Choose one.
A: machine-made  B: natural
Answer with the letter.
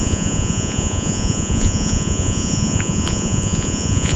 A